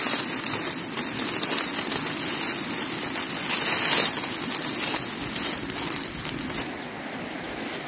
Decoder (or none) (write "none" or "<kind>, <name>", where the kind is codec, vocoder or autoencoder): none